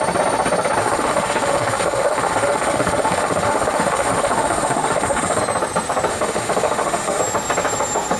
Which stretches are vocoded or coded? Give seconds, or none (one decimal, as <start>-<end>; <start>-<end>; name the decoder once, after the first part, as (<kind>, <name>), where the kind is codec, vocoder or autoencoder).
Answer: 0.8-5.4 (autoencoder, DAC-VAE); 6.1-7.2

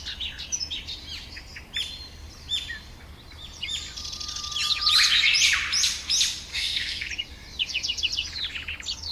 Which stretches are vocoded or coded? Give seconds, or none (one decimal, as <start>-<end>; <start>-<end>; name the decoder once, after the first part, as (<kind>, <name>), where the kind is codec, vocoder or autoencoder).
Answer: 6.5-7.1 (codec, SNAC)

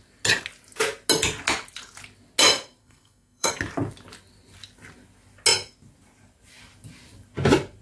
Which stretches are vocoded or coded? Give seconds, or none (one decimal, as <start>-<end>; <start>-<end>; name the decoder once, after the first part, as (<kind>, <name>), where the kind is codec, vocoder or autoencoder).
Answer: 2.8-3.5 (codec, SNAC)

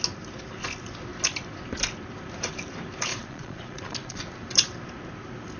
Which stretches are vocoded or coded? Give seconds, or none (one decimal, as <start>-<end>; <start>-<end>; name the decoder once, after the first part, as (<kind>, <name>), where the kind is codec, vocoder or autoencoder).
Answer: 3.1-4.2 (vocoder, Vocos)

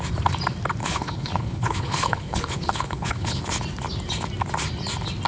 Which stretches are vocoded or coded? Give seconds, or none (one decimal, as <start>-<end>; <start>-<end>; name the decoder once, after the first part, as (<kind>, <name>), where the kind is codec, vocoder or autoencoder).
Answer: 0.8-3.4 (codec, HILCodec)

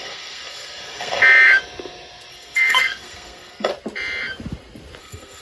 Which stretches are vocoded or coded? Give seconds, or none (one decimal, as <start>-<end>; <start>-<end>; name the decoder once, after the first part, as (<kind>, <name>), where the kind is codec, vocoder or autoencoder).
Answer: 0.0-1.2 (codec, SNAC); 2.3-3.7; 5.0-5.4